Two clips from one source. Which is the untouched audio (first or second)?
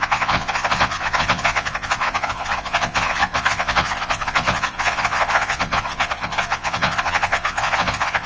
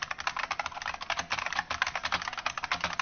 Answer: second